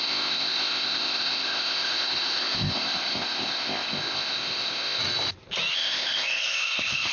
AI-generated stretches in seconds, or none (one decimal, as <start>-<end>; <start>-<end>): 0.0-5.0; 5.7-7.1